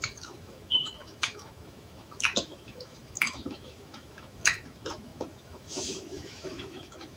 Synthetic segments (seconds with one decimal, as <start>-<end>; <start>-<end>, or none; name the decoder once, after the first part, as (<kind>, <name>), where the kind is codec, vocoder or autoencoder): 0.0-7.2 (autoencoder, DAC-VAE)

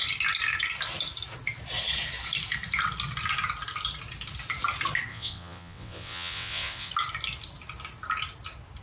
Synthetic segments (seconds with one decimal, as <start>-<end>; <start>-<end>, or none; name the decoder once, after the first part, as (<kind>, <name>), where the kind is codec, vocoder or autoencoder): 5.1-6.9 (vocoder, WaveNeXt)